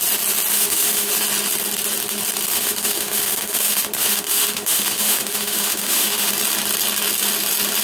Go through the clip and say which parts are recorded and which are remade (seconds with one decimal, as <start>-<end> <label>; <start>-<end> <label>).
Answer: 0.0-0.5 recorded; 0.5-1.1 remade; 1.1-2.5 recorded; 2.5-6.3 remade; 6.3-7.8 recorded